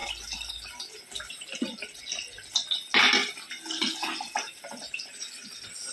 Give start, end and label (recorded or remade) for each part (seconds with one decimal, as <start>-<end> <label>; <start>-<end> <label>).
0.0-2.0 remade; 2.0-3.2 recorded; 3.2-5.9 remade